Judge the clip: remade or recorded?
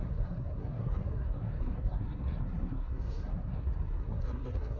remade